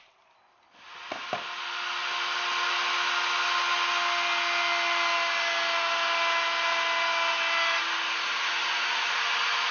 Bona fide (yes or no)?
yes